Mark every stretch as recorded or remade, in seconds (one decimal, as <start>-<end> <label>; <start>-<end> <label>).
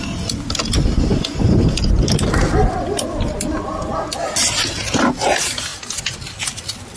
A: 0.0-7.0 recorded